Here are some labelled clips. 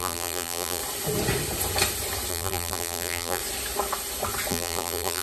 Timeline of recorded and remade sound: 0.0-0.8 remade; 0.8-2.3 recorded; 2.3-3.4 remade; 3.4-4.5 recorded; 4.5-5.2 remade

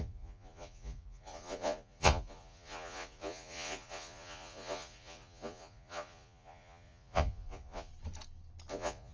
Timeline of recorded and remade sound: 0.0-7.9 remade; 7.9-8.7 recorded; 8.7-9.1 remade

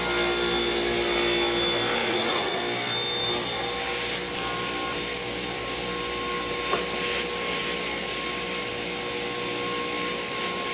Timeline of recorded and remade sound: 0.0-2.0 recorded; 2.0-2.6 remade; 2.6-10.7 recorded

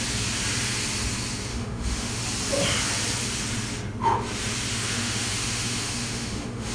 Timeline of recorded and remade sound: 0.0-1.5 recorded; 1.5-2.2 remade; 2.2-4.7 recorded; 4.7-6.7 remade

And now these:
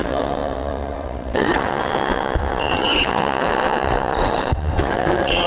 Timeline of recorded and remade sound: 0.0-5.5 remade

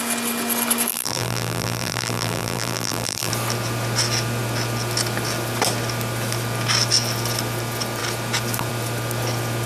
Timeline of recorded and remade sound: 0.0-0.9 recorded; 0.9-3.3 remade; 3.3-9.7 recorded